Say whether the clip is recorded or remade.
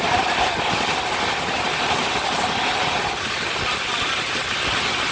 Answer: recorded